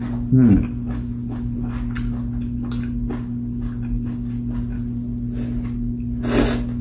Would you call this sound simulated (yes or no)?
no